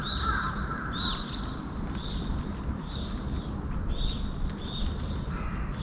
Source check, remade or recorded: recorded